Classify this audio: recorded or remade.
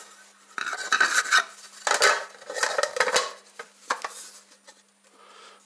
recorded